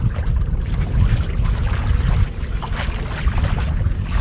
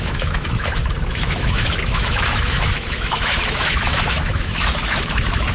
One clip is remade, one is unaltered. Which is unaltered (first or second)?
first